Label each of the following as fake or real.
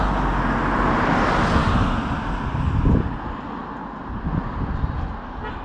real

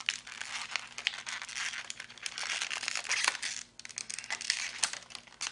real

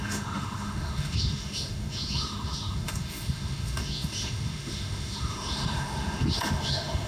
fake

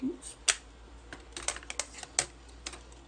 real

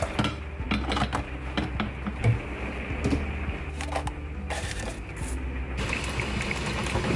real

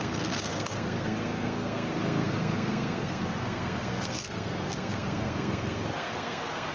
fake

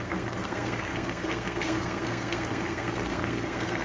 fake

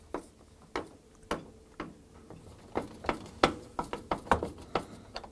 real